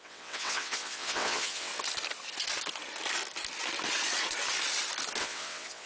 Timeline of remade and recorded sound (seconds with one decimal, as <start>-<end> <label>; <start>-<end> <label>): 0.0-1.7 remade; 1.7-5.2 recorded; 5.2-5.9 remade